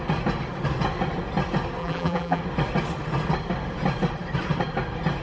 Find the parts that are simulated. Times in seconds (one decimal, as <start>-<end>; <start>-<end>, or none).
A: 1.8-2.4